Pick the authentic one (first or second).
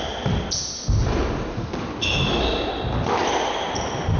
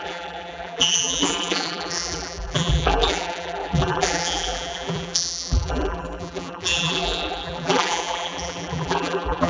first